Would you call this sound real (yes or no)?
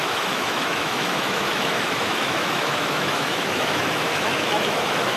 no